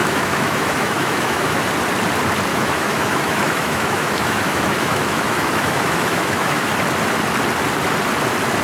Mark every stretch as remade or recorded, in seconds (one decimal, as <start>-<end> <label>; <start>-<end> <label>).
0.0-1.6 remade; 1.6-2.5 recorded; 2.5-6.7 remade; 6.7-8.6 recorded